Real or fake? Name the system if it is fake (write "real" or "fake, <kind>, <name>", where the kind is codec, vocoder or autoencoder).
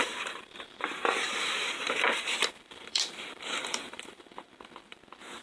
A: fake, vocoder, BigVGAN v2